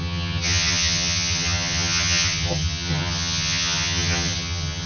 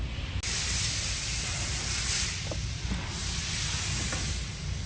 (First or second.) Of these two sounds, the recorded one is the second